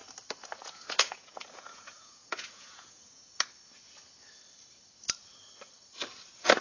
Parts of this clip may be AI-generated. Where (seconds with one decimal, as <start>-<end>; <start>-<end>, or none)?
0.6-3.3